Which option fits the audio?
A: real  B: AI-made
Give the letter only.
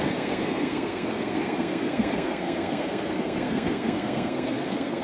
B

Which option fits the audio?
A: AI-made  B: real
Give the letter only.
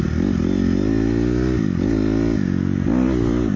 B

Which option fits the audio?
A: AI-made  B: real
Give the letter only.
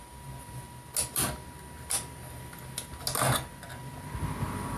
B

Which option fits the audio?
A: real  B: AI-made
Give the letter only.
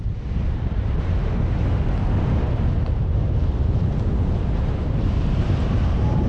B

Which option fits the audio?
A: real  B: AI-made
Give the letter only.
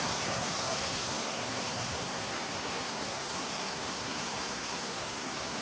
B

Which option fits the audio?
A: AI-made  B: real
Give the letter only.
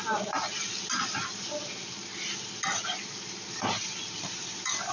B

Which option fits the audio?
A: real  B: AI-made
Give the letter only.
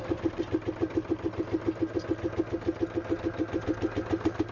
A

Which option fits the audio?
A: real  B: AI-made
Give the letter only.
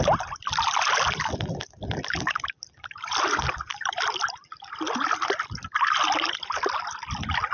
A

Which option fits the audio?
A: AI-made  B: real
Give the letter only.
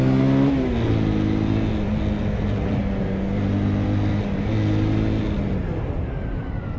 B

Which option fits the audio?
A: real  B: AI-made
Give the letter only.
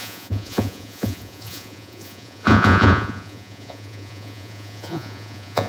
B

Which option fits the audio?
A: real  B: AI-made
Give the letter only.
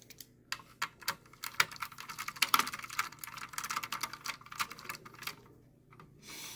A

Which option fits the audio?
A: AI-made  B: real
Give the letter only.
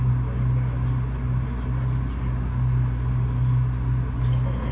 B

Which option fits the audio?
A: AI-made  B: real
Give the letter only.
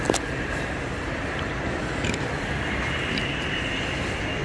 A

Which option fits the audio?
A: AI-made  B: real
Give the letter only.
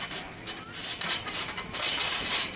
B